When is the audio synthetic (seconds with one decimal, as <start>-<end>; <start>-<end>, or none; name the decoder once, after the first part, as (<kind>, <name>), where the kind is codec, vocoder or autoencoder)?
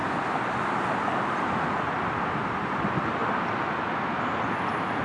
none